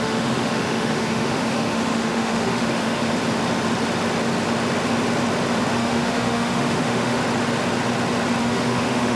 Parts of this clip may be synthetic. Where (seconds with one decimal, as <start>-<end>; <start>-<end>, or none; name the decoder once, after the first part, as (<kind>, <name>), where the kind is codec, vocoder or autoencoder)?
0.0-3.0 (autoencoder, DAC-VAE); 5.8-7.2; 8.4-9.2